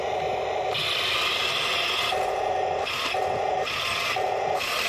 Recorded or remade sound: recorded